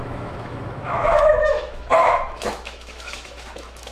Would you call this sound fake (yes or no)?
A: yes